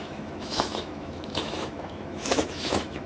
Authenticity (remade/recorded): remade